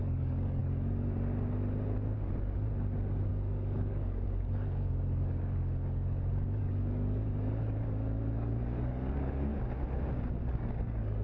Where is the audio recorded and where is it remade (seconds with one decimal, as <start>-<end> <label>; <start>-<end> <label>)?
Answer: 0.0-0.6 remade; 0.6-3.3 recorded; 3.3-9.5 remade; 9.5-10.5 recorded; 10.5-11.2 remade